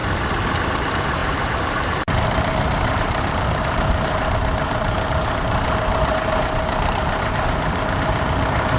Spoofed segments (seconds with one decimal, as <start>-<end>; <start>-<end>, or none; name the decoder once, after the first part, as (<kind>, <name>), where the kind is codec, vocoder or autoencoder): 0.7-8.8 (vocoder, BigVGAN v2)